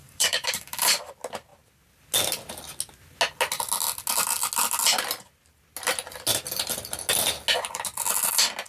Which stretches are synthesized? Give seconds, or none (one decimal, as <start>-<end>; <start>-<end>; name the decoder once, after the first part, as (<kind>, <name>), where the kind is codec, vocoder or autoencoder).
0.0-1.1 (codec, DAC)

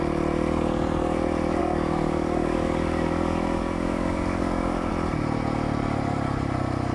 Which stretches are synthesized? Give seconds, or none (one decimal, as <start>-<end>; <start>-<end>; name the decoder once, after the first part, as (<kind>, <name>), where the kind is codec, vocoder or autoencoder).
1.6-4.9 (codec, DAC)

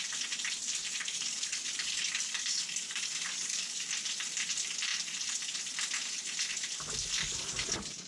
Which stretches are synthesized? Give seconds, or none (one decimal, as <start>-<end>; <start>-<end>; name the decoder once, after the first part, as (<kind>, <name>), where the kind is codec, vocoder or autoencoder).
1.0-3.9 (codec, DAC); 7.2-8.1

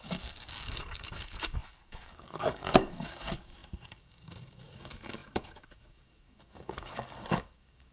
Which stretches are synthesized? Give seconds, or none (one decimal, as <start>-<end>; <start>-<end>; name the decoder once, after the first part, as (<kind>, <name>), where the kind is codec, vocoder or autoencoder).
0.0-7.9 (codec, DAC)